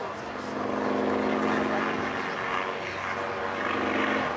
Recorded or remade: recorded